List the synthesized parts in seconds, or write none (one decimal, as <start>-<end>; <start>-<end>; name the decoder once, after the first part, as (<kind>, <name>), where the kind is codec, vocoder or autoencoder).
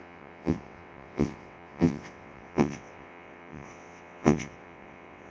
0.0-5.3 (vocoder, WaveNeXt)